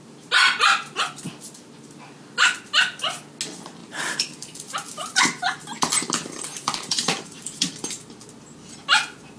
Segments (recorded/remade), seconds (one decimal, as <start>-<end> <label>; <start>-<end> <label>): 0.0-3.8 recorded; 3.8-8.1 remade; 8.1-9.4 recorded